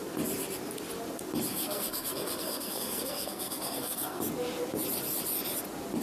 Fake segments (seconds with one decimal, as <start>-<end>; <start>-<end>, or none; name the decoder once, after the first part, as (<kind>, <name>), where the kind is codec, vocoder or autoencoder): 1.5-4.2 (codec, SNAC)